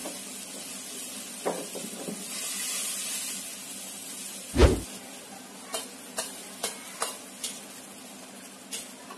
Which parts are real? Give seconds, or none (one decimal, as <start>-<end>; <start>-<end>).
0.0-9.2